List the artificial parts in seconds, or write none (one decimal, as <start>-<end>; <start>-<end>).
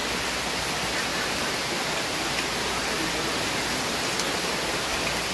1.1-3.6